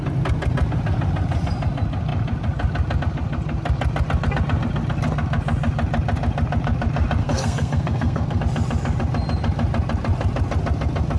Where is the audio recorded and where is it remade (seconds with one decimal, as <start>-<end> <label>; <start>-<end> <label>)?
0.0-7.2 recorded; 7.2-8.4 remade; 8.4-11.2 recorded